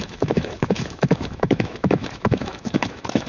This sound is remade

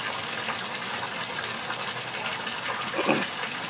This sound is recorded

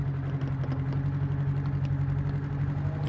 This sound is recorded